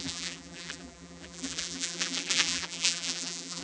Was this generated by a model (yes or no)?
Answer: yes